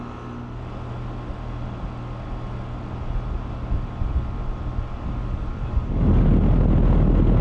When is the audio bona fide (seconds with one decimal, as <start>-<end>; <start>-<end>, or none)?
0.0-5.2; 6.3-7.4